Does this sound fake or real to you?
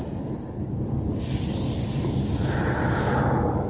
real